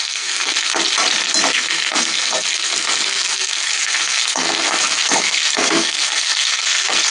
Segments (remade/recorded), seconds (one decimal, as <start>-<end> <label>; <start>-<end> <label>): 0.0-0.7 remade; 0.7-1.5 recorded; 1.5-7.1 remade